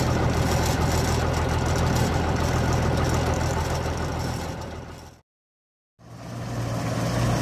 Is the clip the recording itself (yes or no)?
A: yes